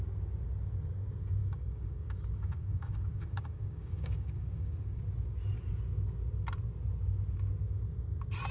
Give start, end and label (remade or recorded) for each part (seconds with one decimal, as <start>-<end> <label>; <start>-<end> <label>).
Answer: 0.0-1.4 recorded; 1.4-5.0 remade; 5.0-8.5 recorded

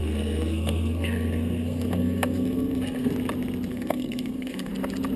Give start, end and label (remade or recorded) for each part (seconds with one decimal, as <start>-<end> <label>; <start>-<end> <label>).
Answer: 0.0-3.1 remade; 3.1-3.7 recorded; 3.7-4.7 remade; 4.7-5.2 recorded

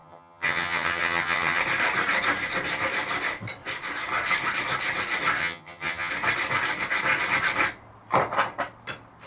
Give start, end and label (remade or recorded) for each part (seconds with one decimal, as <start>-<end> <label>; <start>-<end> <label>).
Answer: 0.0-1.6 remade; 1.6-5.4 recorded; 5.4-6.1 remade; 6.1-9.3 recorded

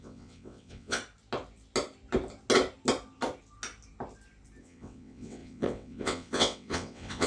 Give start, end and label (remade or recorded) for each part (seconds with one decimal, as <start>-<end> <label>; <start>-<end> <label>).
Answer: 0.0-1.0 remade; 1.0-4.6 recorded; 4.6-7.3 remade